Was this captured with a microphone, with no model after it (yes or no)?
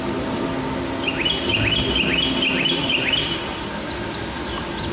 yes